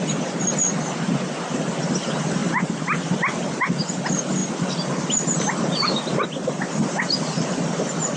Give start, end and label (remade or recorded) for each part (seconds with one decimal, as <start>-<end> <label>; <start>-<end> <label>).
0.0-8.2 recorded